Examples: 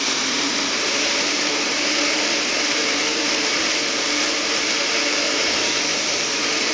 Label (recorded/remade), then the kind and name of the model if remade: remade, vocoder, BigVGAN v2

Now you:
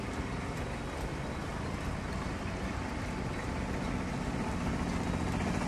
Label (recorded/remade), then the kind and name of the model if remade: recorded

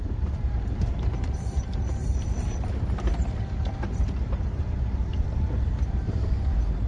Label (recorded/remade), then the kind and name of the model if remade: remade, vocoder, BigVGAN v2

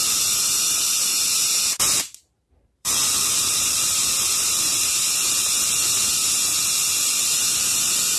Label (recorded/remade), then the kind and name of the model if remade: remade, vocoder, BigVGAN v2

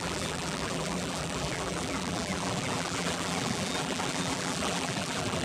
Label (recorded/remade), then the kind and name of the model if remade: remade, vocoder, BigVGAN v2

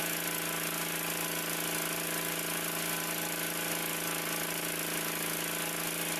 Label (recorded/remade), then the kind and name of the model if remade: recorded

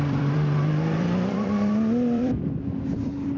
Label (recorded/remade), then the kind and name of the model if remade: remade, vocoder, BigVGAN v2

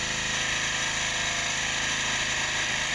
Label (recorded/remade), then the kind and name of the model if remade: recorded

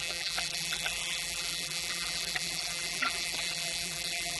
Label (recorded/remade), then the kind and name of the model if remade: remade, vocoder, BigVGAN v2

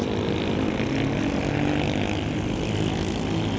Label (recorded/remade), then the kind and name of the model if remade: recorded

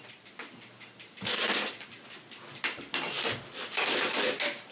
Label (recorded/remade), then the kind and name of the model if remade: recorded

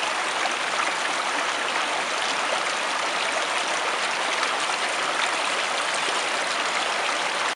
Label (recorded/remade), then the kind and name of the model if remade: recorded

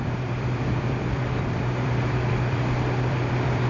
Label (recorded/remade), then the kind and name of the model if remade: remade, vocoder, BigVGAN v2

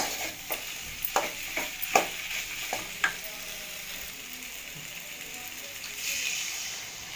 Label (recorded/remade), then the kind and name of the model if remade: recorded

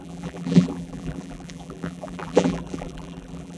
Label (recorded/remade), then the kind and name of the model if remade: remade, vocoder, BigVGAN v2